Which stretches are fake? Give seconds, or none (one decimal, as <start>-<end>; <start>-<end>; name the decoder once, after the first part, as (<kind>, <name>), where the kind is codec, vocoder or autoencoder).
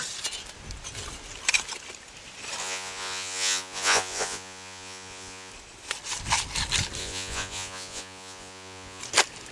2.6-5.5 (vocoder, Vocos); 7.0-9.0